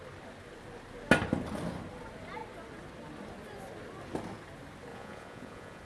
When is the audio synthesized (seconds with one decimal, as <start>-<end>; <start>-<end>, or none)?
4.9-5.8